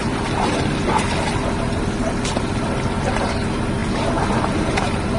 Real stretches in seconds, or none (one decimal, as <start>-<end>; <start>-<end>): 3.1-3.8; 4.4-5.2